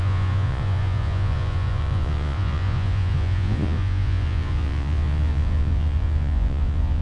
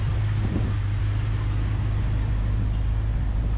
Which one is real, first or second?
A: second